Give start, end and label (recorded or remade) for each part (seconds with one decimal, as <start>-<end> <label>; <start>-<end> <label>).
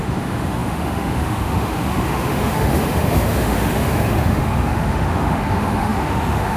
0.0-6.6 remade